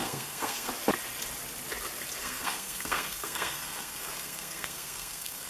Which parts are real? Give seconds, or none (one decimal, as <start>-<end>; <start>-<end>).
0.7-2.2